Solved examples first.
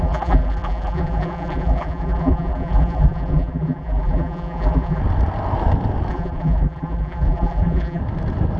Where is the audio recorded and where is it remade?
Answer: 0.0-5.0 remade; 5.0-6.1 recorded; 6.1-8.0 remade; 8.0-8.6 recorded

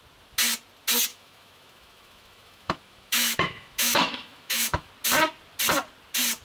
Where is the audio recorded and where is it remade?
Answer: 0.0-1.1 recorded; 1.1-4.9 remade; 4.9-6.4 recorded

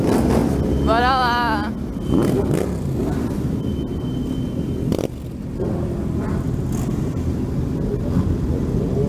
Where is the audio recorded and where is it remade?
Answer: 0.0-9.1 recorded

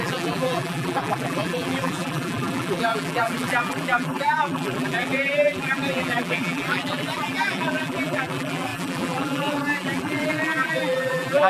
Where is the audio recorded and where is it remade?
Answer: 0.0-11.5 remade

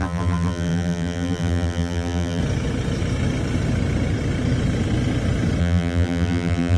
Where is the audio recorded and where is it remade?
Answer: 0.0-2.4 remade; 2.4-5.6 recorded; 5.6-6.8 remade